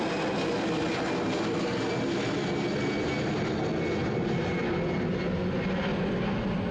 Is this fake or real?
real